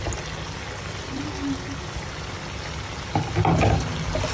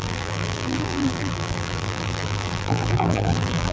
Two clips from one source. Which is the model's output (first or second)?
second